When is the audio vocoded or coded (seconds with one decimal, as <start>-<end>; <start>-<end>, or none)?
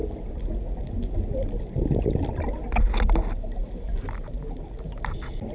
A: none